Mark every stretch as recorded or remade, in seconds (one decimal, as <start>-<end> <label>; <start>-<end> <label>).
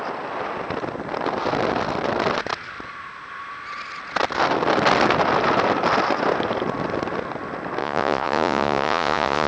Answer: 0.0-7.8 recorded; 7.8-9.5 remade